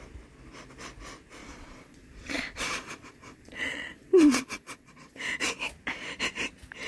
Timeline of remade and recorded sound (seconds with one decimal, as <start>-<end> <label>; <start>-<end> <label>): 0.0-1.4 recorded; 1.4-5.5 remade; 5.5-6.9 recorded